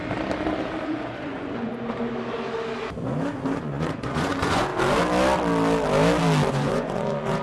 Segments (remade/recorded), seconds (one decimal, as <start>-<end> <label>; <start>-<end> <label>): 0.0-0.8 recorded; 0.8-1.7 remade; 1.7-3.6 recorded; 3.6-4.7 remade; 4.7-6.5 recorded; 6.5-7.4 remade